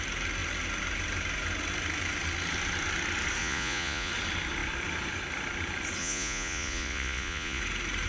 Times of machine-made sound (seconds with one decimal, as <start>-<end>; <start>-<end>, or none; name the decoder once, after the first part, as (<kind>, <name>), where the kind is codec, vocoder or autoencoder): 3.4-4.1 (vocoder, Vocos); 6.0-7.6